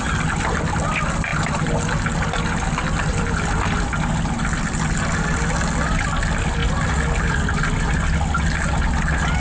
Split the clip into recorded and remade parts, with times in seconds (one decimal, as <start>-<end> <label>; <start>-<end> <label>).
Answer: 0.0-9.4 recorded